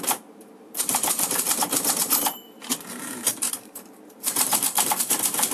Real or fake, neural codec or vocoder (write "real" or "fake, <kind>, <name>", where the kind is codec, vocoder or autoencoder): fake, vocoder, BigVGAN v2